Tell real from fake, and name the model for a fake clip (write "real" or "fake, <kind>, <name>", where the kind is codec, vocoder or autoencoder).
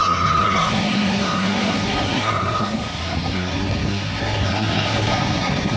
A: fake, codec, SNAC